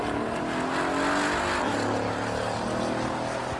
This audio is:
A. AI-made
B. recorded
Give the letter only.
B